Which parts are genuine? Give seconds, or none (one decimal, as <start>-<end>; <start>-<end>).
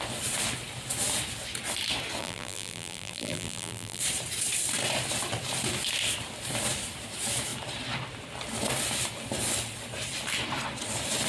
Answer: 0.0-2.2; 4.0-11.3